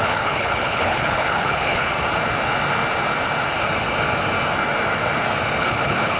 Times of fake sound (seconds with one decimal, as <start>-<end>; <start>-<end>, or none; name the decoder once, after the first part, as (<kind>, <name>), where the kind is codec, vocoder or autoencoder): 0.0-1.9 (codec, HILCodec); 5.6-6.2

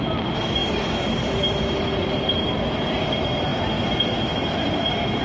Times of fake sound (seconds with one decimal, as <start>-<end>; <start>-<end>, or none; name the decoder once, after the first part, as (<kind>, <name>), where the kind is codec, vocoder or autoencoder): none

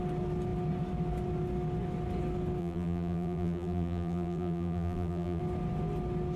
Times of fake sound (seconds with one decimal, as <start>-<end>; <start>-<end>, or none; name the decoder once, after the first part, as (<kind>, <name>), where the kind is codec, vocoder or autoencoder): 2.6-5.4 (vocoder, BigVGAN v2)

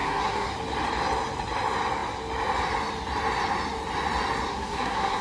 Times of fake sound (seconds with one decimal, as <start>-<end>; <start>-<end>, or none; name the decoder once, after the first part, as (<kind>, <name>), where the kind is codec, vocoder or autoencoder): 0.0-0.5 (codec, SNAC); 4.5-5.2

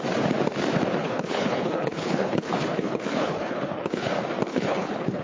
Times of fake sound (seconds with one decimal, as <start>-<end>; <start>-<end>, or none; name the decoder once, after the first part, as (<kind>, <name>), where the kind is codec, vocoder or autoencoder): 1.0-4.1 (codec, HILCodec); 4.5-5.2